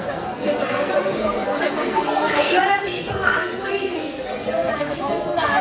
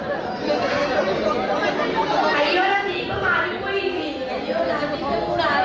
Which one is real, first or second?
second